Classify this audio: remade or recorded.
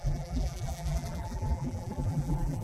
remade